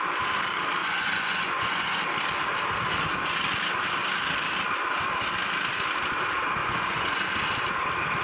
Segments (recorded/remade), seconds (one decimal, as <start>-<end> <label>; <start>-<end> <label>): 0.0-0.8 recorded; 0.8-2.0 remade; 2.0-6.6 recorded; 6.6-7.2 remade; 7.2-8.2 recorded